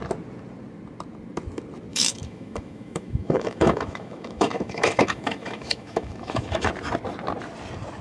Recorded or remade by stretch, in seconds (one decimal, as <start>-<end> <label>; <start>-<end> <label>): 0.0-1.9 recorded; 1.9-6.7 remade; 6.7-8.0 recorded